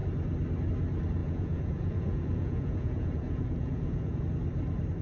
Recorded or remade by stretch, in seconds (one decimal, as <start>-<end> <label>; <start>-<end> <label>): 0.0-1.2 recorded; 1.2-4.2 remade; 4.2-5.0 recorded